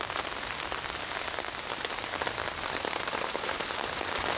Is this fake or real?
real